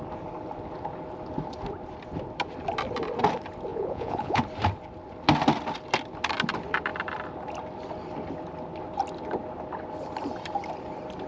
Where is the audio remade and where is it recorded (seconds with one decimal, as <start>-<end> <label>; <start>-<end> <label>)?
0.0-3.7 recorded; 3.7-4.4 remade; 4.4-11.3 recorded